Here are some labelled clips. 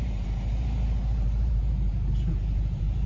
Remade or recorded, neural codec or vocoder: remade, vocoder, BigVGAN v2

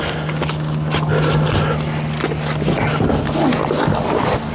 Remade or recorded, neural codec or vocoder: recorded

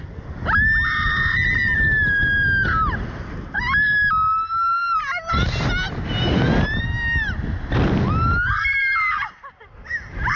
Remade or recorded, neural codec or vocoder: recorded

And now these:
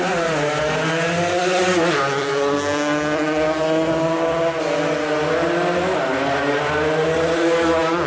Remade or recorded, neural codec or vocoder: recorded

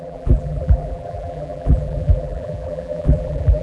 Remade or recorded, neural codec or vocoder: remade, vocoder, BigVGAN v2